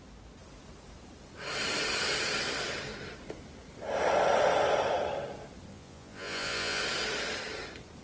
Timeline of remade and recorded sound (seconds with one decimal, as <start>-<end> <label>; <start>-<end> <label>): 0.0-5.7 recorded; 5.7-6.8 remade; 6.8-8.0 recorded